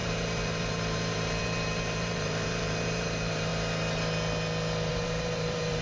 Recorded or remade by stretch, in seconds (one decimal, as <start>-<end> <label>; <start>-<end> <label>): 0.0-3.5 remade; 3.5-4.9 recorded; 4.9-5.8 remade